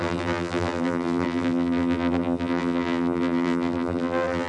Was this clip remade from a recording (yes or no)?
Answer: yes